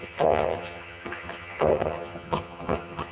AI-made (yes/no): yes